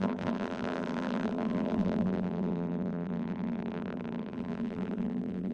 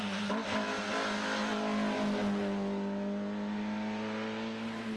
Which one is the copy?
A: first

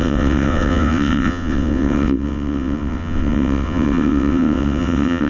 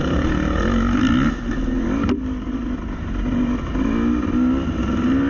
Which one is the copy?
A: first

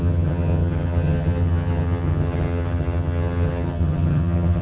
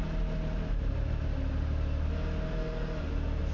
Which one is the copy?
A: first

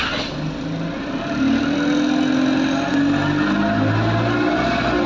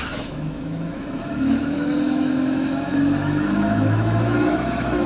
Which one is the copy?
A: second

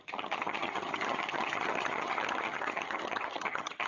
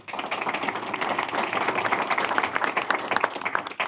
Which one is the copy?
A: first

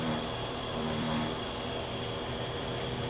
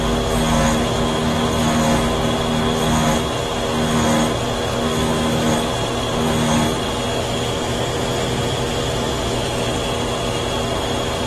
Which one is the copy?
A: first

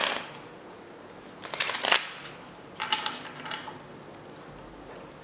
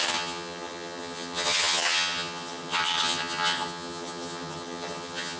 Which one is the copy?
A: second